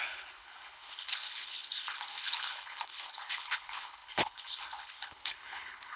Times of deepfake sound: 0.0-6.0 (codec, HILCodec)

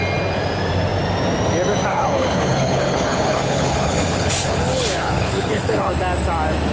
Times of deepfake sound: 1.9-5.9 (codec, HILCodec)

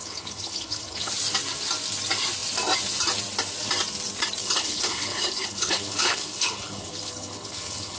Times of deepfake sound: 0.0-1.1 (codec, HILCodec); 4.4-8.0

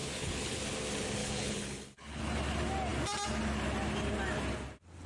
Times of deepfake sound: 0.0-0.6 (codec, HILCodec); 1.2-2.2

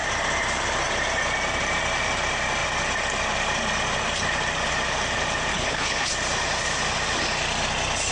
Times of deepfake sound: 5.5-6.1 (codec, HILCodec)

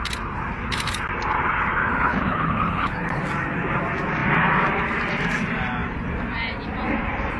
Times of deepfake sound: 1.9-3.2 (codec, HILCodec)